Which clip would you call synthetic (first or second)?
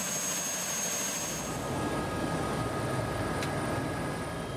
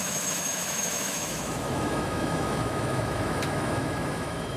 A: second